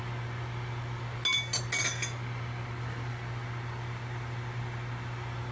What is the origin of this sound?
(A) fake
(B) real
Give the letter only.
B